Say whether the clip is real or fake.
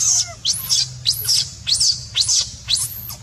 real